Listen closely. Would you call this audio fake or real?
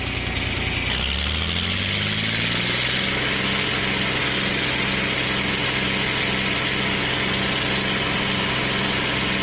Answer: real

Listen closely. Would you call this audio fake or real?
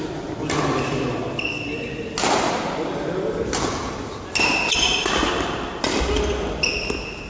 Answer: real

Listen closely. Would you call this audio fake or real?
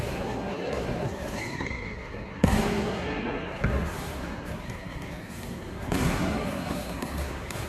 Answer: fake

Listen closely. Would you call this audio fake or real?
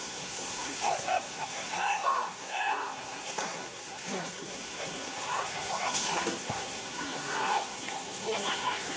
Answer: fake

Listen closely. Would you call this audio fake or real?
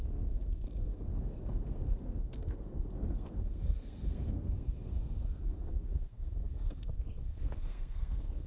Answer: fake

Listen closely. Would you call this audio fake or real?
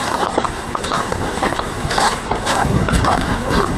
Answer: fake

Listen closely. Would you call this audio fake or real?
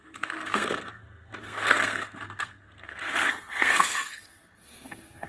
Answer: fake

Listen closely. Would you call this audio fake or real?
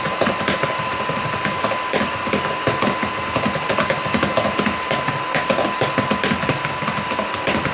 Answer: real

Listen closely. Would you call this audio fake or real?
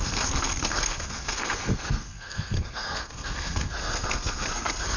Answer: fake